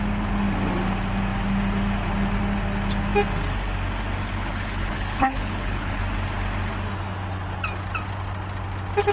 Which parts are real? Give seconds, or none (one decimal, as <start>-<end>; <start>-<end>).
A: 0.0-4.2; 6.0-9.1